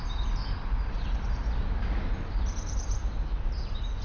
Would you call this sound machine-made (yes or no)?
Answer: no